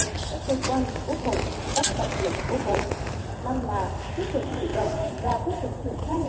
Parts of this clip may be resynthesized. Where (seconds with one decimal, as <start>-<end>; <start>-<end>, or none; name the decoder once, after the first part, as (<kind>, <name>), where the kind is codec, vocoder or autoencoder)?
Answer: 1.7-2.8 (vocoder, Vocos); 4.7-6.3